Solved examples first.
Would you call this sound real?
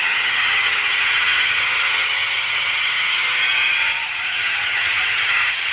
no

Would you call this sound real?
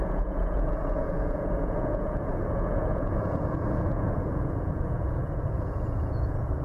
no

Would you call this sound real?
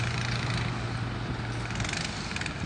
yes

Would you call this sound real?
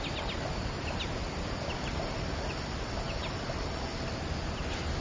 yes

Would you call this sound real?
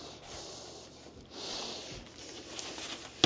yes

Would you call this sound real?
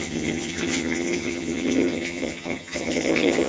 no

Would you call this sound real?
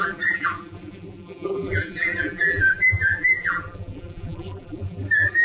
no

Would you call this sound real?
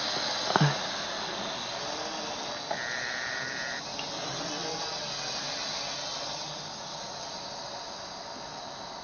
yes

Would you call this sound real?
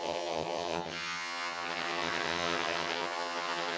no